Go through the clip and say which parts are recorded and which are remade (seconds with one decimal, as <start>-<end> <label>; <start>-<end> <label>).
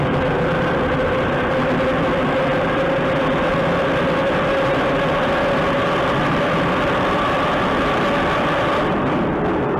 0.0-9.8 recorded